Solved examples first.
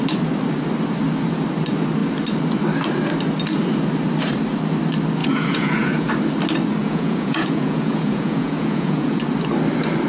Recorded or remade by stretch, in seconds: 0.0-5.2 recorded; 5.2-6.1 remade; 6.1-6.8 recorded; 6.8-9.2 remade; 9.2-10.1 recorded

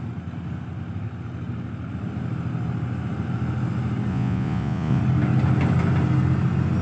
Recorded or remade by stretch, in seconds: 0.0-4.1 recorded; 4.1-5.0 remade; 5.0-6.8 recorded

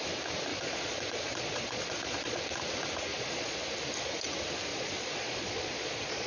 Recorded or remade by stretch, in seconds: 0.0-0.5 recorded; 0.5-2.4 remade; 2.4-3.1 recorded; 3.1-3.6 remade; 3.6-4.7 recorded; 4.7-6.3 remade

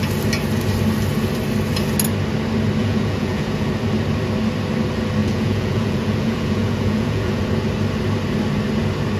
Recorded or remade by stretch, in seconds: 0.0-2.8 recorded; 2.8-3.7 remade; 3.7-5.2 recorded; 5.2-7.4 remade; 7.4-9.2 recorded

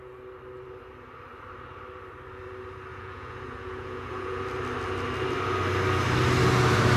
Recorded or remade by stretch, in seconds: 0.0-2.9 recorded; 2.9-4.4 remade; 4.4-7.0 recorded